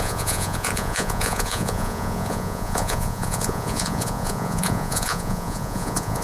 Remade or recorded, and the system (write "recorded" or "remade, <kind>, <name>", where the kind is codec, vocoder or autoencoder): remade, vocoder, Vocos